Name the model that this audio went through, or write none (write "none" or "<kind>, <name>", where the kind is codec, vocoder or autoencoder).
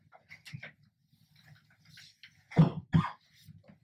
none